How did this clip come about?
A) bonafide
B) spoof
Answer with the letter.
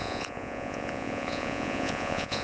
B